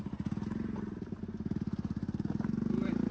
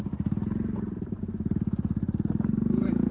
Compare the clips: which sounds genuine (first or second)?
first